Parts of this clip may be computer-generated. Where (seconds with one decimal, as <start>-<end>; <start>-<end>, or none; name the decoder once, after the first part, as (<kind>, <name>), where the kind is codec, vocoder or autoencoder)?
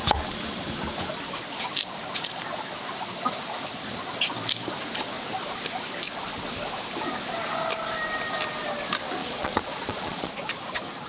9.2-10.3 (vocoder, Vocos)